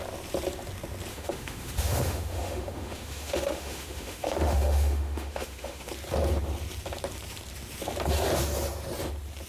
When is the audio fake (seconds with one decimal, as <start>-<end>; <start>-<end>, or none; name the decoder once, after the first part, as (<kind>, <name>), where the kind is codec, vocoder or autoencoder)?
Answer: 1.1-5.9 (autoencoder, DAC-VAE)